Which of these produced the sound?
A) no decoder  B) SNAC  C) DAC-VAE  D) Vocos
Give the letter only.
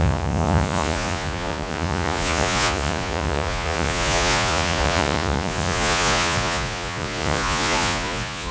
D